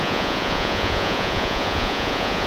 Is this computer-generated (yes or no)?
yes